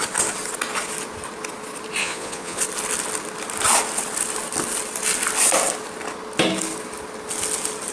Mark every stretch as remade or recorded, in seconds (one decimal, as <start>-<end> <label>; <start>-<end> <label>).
0.0-2.0 recorded; 2.0-2.6 remade; 2.6-7.9 recorded